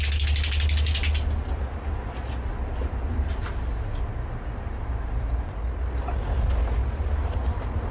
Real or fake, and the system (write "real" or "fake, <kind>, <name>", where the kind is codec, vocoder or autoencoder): real